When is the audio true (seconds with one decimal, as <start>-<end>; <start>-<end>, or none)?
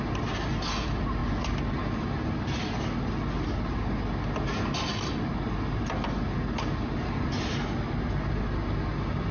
0.0-9.3